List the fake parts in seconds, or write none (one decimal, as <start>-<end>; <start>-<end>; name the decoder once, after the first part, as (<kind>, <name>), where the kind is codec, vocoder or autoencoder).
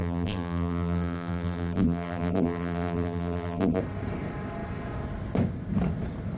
0.0-3.8 (vocoder, BigVGAN v2)